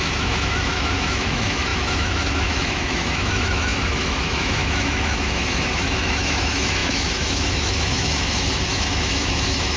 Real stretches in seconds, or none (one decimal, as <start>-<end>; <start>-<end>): none